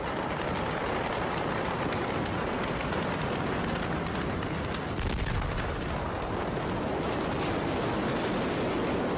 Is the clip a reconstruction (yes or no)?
no